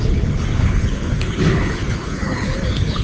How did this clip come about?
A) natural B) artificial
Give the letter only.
B